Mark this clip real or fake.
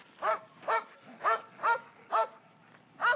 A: real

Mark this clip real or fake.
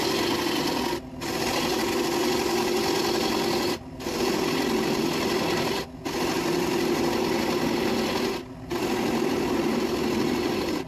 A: real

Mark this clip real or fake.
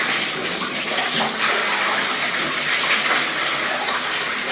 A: real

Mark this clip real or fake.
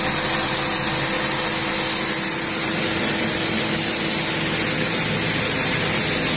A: real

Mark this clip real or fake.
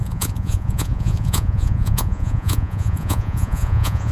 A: fake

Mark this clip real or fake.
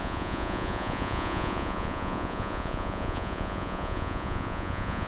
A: fake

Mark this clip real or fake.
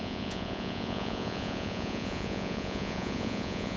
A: fake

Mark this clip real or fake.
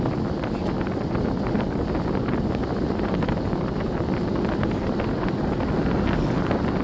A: real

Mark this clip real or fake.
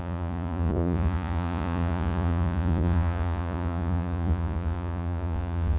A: fake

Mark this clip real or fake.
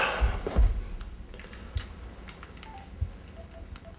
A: real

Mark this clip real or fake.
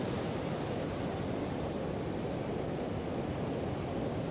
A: real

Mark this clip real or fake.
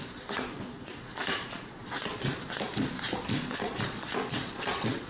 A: fake